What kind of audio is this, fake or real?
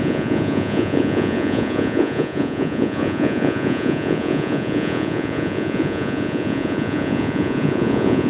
fake